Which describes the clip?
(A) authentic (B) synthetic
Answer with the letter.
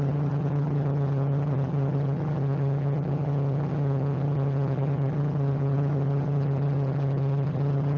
B